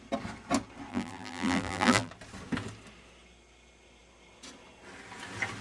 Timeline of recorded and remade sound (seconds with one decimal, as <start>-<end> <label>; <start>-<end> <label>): 0.0-0.9 recorded; 0.9-2.1 remade; 2.1-5.6 recorded